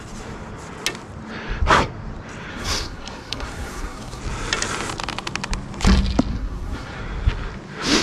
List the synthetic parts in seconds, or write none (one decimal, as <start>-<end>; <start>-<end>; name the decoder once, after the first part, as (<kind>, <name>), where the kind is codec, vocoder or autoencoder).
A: 2.5-4.2 (codec, SNAC); 6.3-7.0